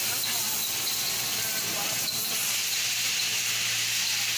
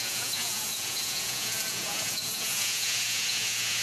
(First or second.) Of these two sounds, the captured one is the first